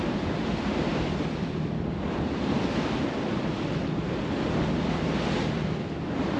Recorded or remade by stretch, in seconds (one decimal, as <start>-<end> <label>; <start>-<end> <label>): 0.0-0.9 recorded; 0.9-4.2 remade; 4.2-6.4 recorded

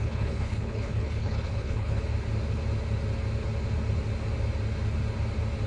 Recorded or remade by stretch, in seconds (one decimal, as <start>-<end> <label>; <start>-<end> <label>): 0.0-2.0 remade; 2.0-5.7 recorded

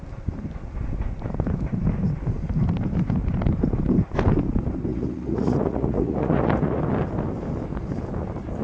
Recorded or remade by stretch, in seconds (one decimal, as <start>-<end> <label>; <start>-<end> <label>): 0.0-4.9 recorded; 4.9-6.8 remade; 6.8-8.6 recorded

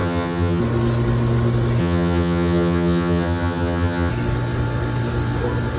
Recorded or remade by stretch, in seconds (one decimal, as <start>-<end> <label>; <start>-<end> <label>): 0.0-0.6 remade; 0.6-1.8 recorded; 1.8-4.1 remade; 4.1-5.8 recorded